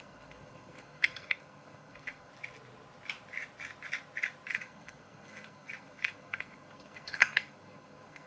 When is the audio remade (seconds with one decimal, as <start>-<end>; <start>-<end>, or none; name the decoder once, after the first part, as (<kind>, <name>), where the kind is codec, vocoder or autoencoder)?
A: 0.0-2.3 (codec, SNAC); 4.5-8.3